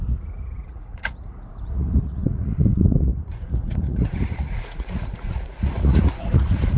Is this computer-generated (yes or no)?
yes